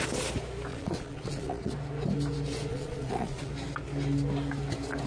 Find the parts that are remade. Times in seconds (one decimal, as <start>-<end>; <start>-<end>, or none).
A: 0.7-1.7; 2.7-3.5